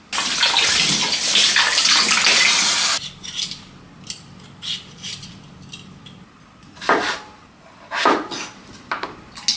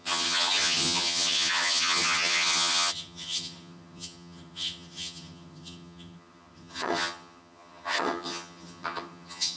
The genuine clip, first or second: first